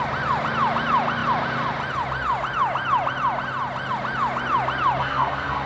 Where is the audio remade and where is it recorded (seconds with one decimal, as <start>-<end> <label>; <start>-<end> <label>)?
0.0-5.0 recorded; 5.0-5.7 remade